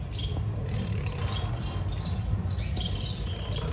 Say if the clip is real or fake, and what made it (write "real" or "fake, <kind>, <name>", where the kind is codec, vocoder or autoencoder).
real